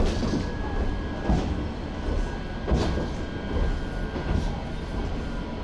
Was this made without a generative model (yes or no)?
yes